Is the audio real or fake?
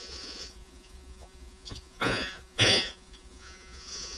fake